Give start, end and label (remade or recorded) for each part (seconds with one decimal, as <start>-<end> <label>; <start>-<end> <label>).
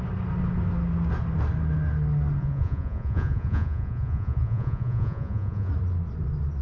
0.0-2.4 recorded; 2.4-5.7 remade; 5.7-6.6 recorded